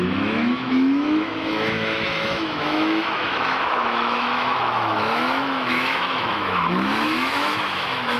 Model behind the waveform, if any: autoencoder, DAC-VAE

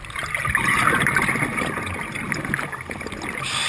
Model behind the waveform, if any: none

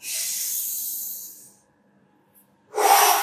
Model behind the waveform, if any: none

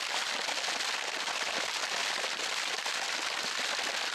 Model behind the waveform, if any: none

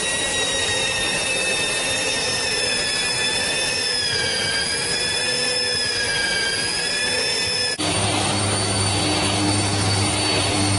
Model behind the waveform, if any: none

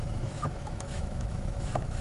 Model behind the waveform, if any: autoencoder, DAC-VAE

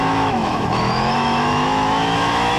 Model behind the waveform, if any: autoencoder, DAC-VAE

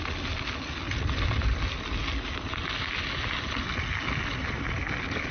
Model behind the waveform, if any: none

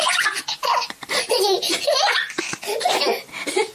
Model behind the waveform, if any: none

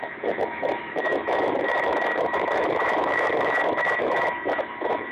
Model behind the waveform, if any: autoencoder, DAC-VAE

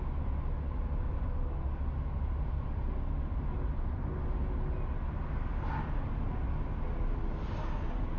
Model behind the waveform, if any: none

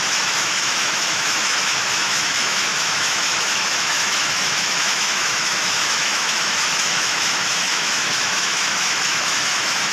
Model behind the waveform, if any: autoencoder, DAC-VAE